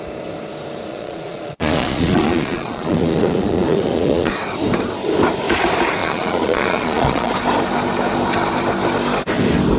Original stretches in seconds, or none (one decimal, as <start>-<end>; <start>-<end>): 0.0-0.9; 4.3-6.0; 7.3-9.8